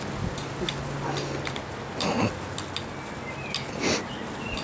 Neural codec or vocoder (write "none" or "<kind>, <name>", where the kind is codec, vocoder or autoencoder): none